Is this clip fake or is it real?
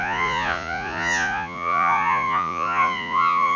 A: fake